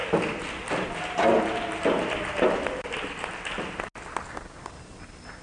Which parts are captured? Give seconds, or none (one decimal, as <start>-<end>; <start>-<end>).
0.0-5.4